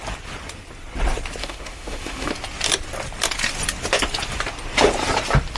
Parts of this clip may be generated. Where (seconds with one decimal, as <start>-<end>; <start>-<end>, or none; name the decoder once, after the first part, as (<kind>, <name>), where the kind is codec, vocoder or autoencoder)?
1.4-2.3 (autoencoder, DAC-VAE)